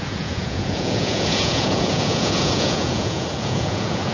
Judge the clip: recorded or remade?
remade